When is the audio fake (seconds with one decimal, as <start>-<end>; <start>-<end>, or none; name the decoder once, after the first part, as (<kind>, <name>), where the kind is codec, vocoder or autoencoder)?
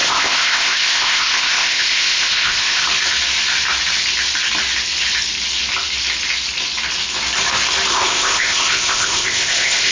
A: 0.0-2.8 (codec, ZipCodec); 7.9-9.9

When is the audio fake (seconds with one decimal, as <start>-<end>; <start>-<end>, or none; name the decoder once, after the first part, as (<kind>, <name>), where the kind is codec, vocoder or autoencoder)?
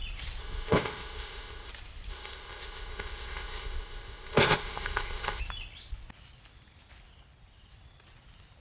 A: 0.4-1.7 (codec, ZipCodec); 2.1-5.4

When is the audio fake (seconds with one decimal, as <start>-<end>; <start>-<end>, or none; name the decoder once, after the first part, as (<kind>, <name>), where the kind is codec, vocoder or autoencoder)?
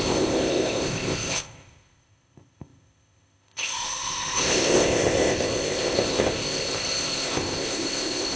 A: 0.0-8.4 (codec, ZipCodec)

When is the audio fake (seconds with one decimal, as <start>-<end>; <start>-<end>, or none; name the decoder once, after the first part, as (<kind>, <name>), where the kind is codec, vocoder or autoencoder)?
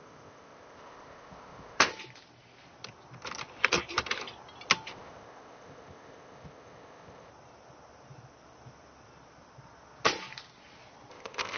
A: 0.0-1.9 (codec, ZipCodec); 4.9-7.3; 11.1-11.6